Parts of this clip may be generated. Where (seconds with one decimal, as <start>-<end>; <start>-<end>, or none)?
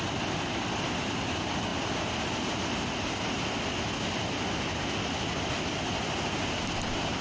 none